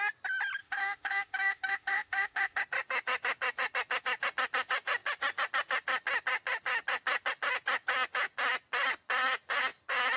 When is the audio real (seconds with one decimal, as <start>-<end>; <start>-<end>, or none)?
0.0-0.6; 2.6-10.2